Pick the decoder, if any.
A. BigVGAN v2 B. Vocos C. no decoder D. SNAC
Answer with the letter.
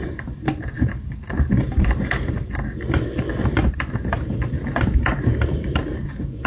A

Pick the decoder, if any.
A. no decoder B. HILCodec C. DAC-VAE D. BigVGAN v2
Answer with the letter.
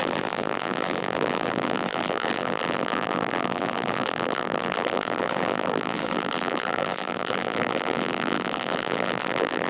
D